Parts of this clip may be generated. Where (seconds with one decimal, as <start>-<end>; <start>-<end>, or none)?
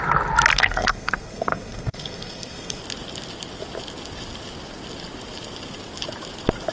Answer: 0.5-2.8